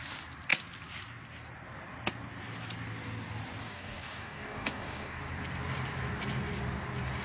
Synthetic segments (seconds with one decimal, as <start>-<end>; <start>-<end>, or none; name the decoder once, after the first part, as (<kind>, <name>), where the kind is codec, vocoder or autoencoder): 3.6-5.2 (codec, DAC)